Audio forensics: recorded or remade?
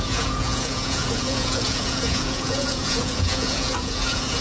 remade